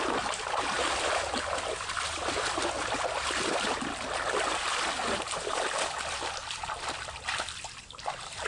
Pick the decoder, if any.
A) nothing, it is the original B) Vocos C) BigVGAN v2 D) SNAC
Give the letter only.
A